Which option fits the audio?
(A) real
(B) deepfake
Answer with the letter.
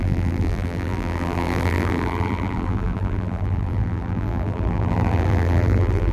B